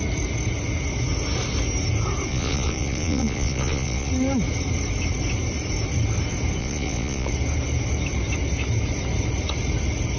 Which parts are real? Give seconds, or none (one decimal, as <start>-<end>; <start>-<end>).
0.0-2.3; 4.1-6.6; 7.3-10.2